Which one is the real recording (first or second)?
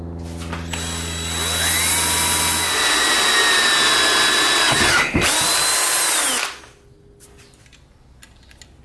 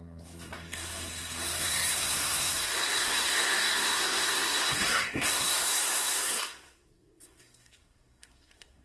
first